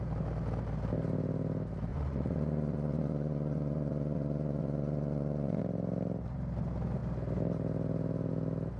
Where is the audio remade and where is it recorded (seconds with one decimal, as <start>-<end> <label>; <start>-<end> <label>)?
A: 0.0-1.9 recorded; 1.9-5.6 remade; 5.6-8.8 recorded